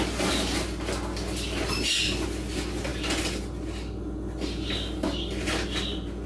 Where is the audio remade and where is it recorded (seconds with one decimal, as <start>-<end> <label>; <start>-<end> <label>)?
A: 0.0-6.3 recorded